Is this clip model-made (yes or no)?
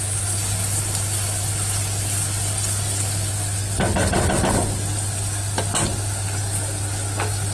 no